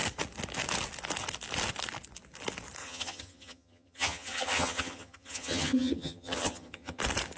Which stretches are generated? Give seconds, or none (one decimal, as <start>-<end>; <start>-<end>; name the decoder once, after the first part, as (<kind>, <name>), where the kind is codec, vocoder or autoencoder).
2.8-7.0 (vocoder, HiFi-GAN)